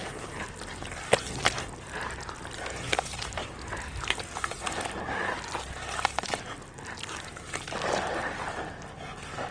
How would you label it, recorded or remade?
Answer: recorded